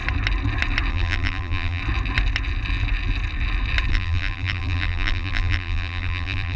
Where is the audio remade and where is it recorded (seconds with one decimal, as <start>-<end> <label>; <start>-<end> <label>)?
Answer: 0.0-0.9 recorded; 0.9-1.8 remade; 1.8-3.9 recorded; 3.9-6.6 remade